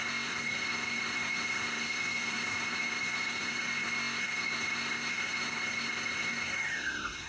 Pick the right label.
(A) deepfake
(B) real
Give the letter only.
A